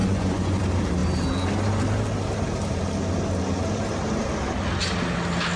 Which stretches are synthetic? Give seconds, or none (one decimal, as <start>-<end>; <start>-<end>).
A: 0.0-0.6